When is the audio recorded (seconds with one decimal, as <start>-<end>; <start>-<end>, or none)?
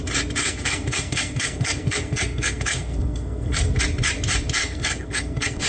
0.0-0.4; 3.8-4.6